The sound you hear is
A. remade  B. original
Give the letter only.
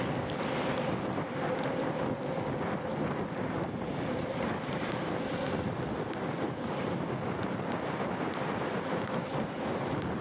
B